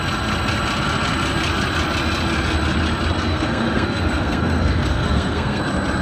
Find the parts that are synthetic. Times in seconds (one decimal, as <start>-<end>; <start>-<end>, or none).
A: 3.3-5.6